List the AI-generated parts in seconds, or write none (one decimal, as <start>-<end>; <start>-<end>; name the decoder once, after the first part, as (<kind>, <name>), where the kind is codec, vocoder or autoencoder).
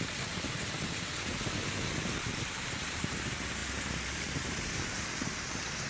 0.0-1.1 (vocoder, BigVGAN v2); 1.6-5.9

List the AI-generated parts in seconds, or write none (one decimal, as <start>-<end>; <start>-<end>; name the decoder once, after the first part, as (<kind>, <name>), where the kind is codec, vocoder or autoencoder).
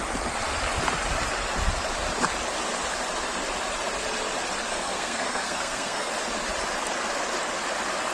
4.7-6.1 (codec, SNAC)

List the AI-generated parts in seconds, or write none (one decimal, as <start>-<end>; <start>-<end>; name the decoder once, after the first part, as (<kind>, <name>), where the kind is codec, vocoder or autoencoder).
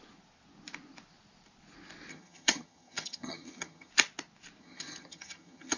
2.1-3.9 (vocoder, HiFi-GAN); 4.6-5.8